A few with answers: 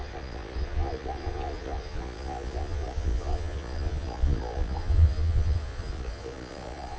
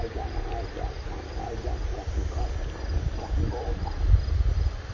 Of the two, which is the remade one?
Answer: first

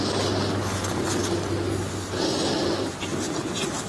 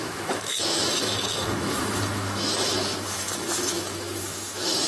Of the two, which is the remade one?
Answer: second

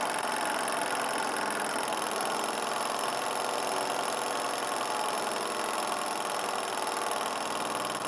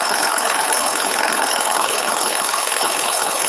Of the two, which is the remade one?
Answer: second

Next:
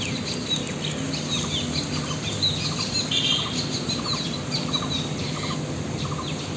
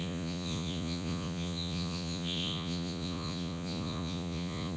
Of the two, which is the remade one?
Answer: second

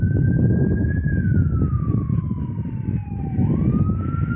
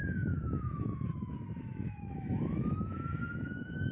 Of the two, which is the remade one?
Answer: second